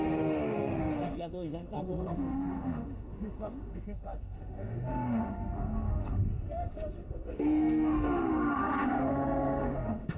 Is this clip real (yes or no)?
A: no